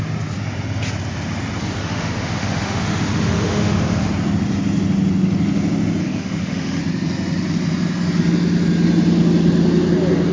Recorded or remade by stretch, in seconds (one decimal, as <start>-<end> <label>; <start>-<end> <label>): 0.0-1.8 recorded; 1.8-4.1 remade; 4.1-6.0 recorded; 6.0-6.8 remade; 6.8-10.3 recorded